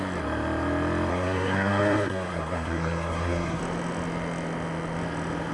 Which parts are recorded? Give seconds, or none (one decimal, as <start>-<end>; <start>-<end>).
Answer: 0.0-1.1; 3.6-5.5